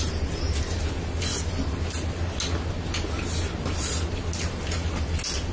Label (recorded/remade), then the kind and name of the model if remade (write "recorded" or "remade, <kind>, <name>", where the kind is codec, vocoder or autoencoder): recorded